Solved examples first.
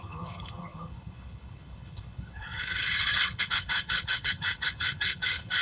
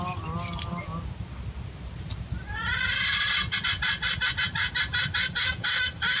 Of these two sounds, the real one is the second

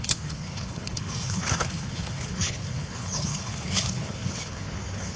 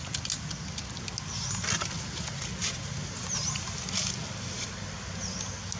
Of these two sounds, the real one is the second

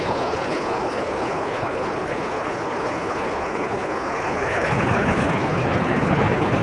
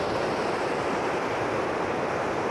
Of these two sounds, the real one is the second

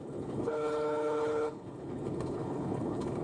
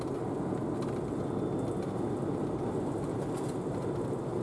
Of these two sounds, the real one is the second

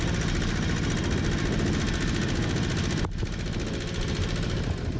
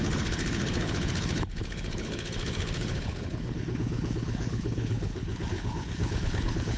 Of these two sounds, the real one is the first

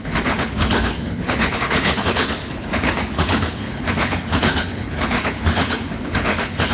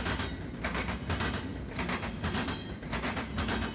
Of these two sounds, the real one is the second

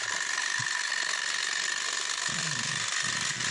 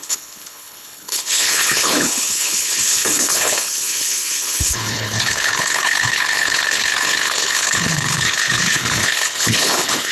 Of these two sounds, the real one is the first